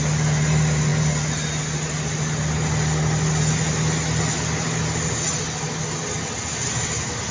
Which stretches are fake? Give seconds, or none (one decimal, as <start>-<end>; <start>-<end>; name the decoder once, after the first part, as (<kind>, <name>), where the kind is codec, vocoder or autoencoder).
none